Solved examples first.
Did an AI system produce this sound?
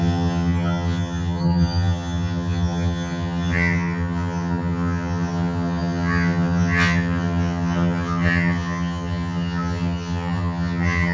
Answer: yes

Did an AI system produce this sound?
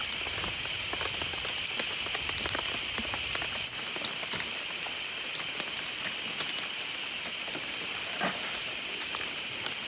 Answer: no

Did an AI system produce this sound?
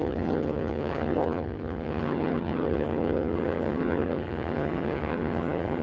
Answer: yes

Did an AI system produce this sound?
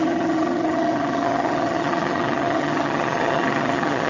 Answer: yes